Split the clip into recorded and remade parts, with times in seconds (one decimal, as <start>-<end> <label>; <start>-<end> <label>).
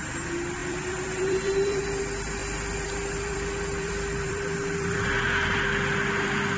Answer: 0.0-0.6 recorded; 0.6-2.0 remade; 2.0-2.4 recorded; 2.4-5.0 remade; 5.0-6.6 recorded